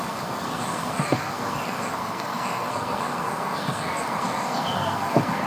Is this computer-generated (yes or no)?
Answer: yes